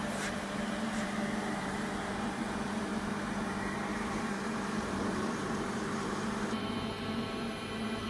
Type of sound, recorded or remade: remade